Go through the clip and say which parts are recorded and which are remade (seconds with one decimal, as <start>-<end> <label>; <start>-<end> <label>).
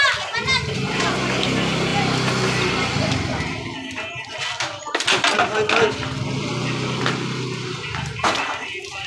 0.0-9.1 recorded